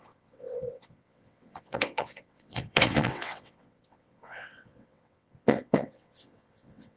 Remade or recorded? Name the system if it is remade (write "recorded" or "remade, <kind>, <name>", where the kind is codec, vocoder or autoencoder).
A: remade, vocoder, WaveNeXt